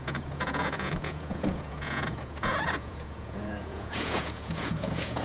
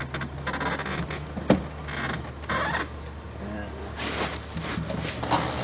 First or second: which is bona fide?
second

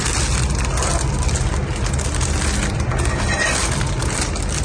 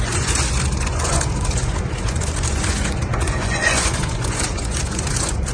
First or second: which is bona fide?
first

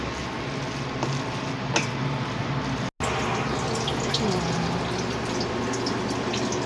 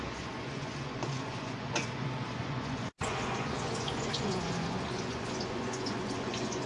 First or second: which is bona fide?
first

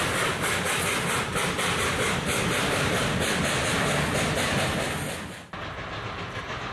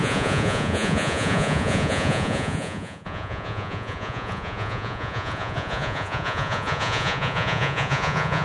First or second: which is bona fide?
first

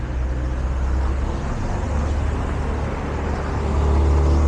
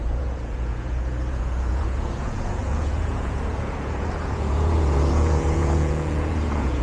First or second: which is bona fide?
first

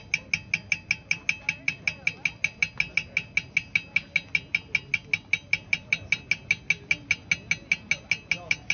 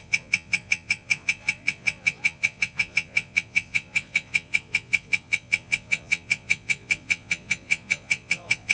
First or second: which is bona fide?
first